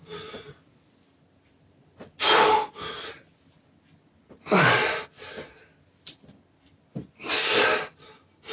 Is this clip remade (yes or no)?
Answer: no